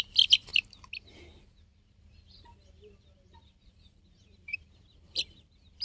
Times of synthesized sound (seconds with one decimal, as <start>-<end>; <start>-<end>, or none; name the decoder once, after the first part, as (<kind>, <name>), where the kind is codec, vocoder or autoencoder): 1.7-5.2 (vocoder, BigVGAN v2)